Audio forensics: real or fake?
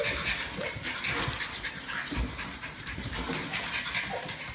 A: real